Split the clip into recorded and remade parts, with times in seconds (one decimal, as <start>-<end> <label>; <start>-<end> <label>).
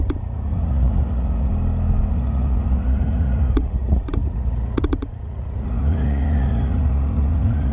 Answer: 0.0-1.5 remade; 1.5-2.1 recorded; 2.1-7.7 remade